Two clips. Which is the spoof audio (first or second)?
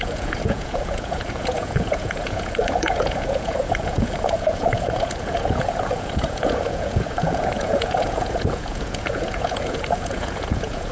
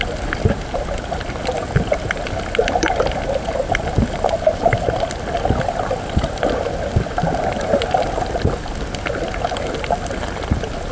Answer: first